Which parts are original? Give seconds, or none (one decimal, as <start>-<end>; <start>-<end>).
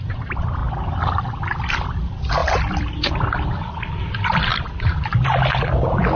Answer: 0.6-1.9; 4.5-6.2